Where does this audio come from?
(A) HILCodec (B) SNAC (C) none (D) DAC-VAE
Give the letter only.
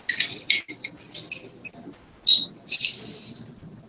C